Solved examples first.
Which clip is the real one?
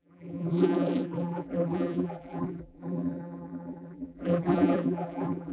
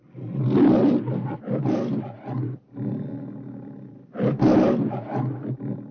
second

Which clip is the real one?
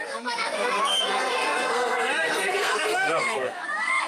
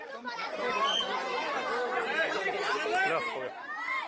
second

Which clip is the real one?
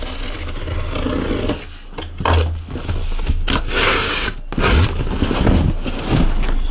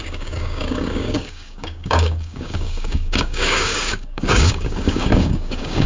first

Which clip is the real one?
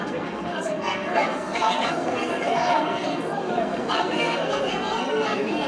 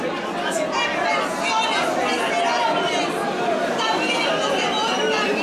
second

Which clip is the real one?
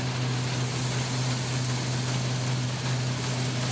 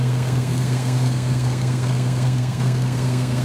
first